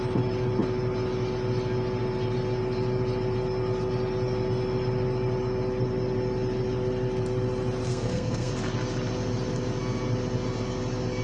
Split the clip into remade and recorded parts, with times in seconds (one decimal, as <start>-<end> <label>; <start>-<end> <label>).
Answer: 0.0-7.9 recorded; 7.9-8.5 remade; 8.5-11.2 recorded